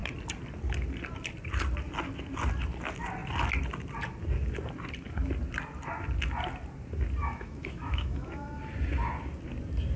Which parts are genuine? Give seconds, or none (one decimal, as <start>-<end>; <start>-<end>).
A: 0.0-7.2; 8.6-10.0